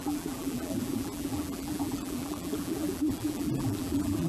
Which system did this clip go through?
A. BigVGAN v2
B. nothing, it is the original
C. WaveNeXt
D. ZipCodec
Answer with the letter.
A